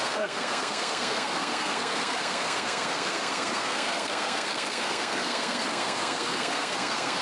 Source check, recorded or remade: remade